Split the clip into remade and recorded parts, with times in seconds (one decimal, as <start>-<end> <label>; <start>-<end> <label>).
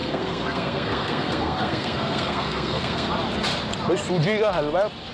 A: 0.0-3.1 remade; 3.1-5.1 recorded